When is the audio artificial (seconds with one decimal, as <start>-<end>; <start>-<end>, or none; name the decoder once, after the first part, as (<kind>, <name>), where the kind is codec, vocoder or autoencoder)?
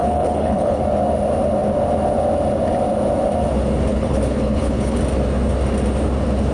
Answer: 0.0-0.8 (codec, HILCodec); 3.9-5.0